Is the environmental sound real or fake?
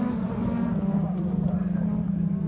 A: real